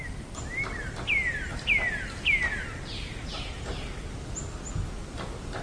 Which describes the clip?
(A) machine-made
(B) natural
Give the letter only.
B